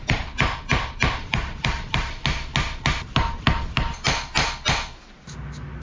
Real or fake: real